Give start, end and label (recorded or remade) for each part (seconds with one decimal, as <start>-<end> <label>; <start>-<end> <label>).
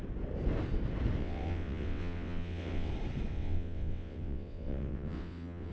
0.0-1.2 recorded; 1.2-2.9 remade; 2.9-3.3 recorded; 3.3-5.7 remade